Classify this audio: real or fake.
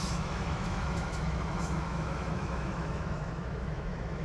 fake